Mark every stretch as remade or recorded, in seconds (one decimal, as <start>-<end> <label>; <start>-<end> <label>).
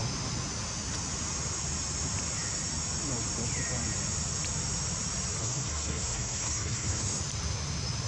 0.0-5.4 recorded; 5.4-7.2 remade; 7.2-8.1 recorded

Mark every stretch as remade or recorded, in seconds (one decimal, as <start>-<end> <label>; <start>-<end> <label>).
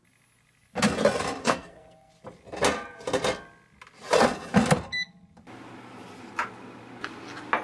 0.0-1.4 recorded; 1.4-2.1 remade; 2.1-7.6 recorded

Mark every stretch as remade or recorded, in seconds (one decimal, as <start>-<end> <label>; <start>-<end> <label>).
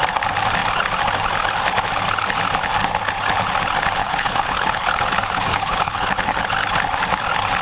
0.0-4.0 recorded; 4.0-5.1 remade; 5.1-5.5 recorded; 5.5-6.4 remade; 6.4-7.6 recorded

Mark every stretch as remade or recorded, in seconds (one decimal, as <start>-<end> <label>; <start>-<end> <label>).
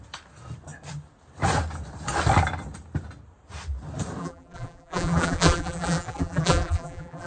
0.0-4.2 recorded; 4.2-7.3 remade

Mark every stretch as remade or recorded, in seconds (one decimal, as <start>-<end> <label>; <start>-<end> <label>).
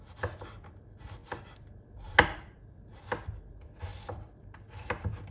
0.0-3.9 recorded; 3.9-4.5 remade; 4.5-5.3 recorded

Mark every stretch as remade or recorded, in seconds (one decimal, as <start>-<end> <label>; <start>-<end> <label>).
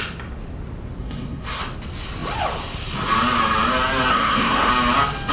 0.0-1.0 recorded; 1.0-1.6 remade; 1.6-4.1 recorded; 4.1-4.7 remade; 4.7-5.3 recorded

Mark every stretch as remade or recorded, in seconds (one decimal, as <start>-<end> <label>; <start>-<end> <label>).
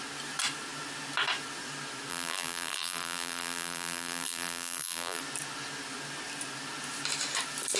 0.0-2.1 recorded; 2.1-5.2 remade; 5.2-7.8 recorded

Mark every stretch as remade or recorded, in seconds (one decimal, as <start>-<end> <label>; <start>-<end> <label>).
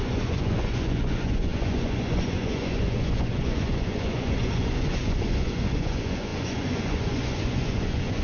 0.0-8.2 remade